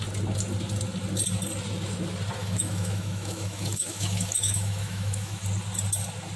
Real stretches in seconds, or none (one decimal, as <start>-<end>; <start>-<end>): 0.0-2.4; 5.4-6.4